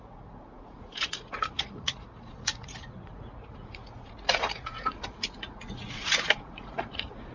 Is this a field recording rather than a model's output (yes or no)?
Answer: no